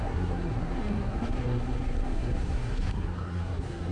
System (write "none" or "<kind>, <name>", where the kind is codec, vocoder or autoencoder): codec, SNAC